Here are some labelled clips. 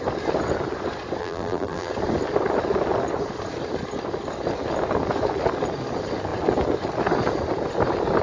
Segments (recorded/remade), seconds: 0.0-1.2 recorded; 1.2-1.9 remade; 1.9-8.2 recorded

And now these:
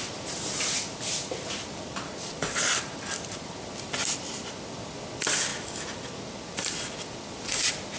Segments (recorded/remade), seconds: 0.0-8.0 recorded

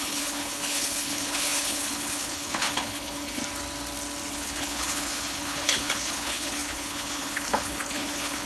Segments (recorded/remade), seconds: 0.0-3.4 remade; 3.4-4.3 recorded; 4.3-8.5 remade

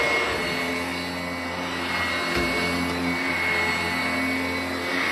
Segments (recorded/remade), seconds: 0.0-5.1 recorded

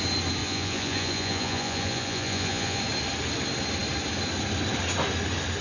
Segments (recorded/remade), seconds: 0.0-0.4 recorded; 0.4-2.8 remade; 2.8-5.6 recorded